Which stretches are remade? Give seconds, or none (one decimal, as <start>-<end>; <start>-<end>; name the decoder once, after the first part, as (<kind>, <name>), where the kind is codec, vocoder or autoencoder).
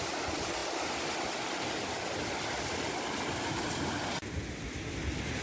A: none